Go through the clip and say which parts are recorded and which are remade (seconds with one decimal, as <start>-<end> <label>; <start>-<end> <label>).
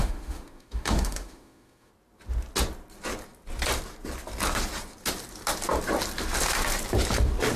0.0-1.9 remade; 1.9-7.6 recorded